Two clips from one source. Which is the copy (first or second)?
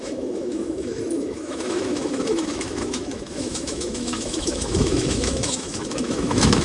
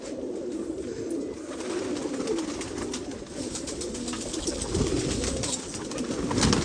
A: first